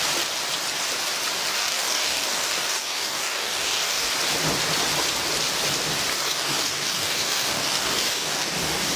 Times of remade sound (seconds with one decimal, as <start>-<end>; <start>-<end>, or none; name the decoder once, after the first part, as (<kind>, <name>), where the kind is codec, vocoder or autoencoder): 1.5-4.1 (codec, DAC); 6.1-9.0

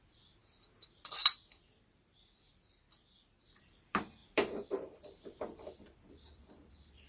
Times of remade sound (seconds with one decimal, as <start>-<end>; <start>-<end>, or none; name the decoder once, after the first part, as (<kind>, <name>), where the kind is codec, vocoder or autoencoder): 0.0-0.4 (vocoder, BigVGAN v2); 3.6-7.1

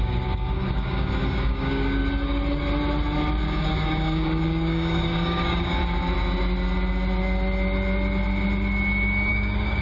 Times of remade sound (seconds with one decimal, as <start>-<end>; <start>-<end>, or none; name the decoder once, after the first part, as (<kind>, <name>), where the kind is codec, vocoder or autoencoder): 0.0-2.0 (codec, DAC); 3.3-5.8; 9.3-9.8

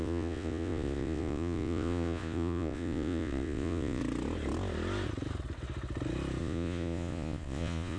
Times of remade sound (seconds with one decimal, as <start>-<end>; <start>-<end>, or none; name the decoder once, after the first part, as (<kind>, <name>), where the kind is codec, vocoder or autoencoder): 0.0-4.0 (vocoder, Vocos); 6.4-8.0

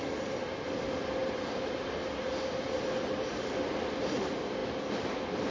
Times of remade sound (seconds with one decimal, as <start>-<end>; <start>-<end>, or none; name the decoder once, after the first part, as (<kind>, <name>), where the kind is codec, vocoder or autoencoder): none